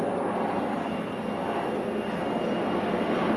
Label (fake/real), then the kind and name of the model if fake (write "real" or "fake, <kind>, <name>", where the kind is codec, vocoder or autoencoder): real